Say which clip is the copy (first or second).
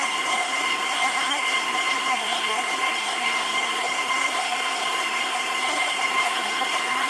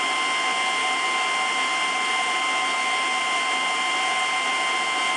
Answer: first